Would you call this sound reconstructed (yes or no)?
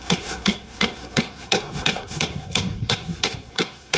yes